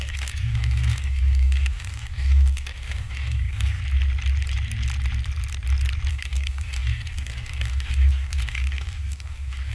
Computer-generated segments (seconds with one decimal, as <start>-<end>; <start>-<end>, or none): 0.0-3.8; 6.1-9.7